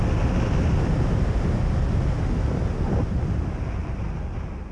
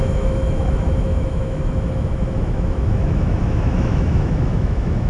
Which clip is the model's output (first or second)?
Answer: second